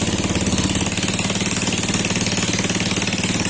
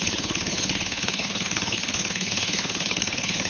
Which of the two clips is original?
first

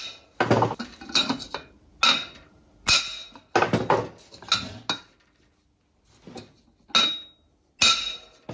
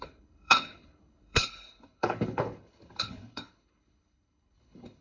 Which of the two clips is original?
first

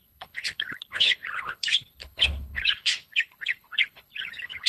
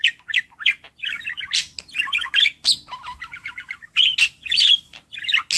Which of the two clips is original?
second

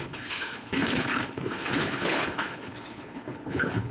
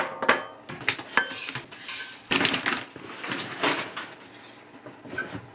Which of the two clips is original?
second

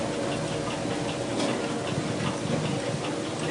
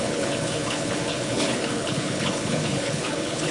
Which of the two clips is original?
first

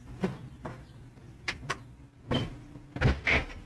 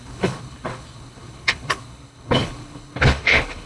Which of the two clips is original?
first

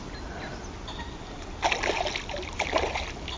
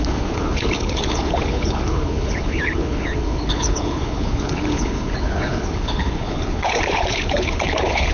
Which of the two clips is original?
first